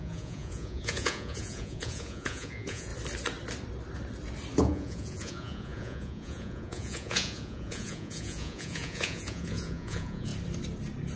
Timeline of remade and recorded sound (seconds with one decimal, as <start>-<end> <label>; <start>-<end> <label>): 0.0-2.9 remade; 2.9-4.6 recorded; 4.6-10.3 remade; 10.3-11.2 recorded